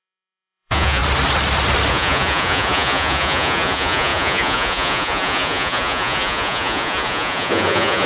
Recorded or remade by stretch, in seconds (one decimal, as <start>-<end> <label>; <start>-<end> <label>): 0.0-1.0 remade; 1.0-1.9 recorded; 1.9-8.1 remade